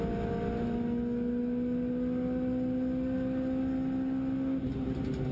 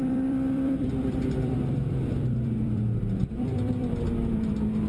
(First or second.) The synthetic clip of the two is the second